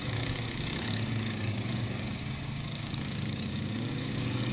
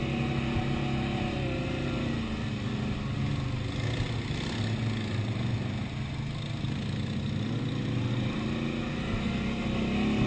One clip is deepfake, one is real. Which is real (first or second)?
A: second